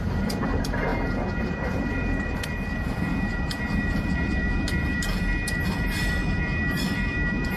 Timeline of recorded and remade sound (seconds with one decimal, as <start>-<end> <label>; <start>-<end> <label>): 0.0-0.9 remade; 0.9-1.4 recorded; 1.4-7.6 remade